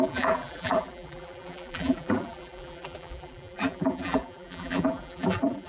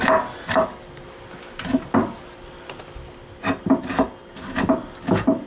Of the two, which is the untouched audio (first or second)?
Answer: second